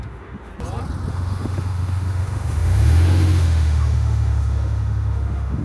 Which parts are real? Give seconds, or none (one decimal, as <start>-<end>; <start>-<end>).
0.5-1.1